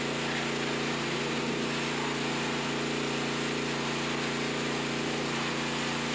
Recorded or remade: recorded